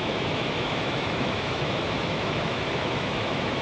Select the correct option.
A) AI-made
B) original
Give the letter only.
A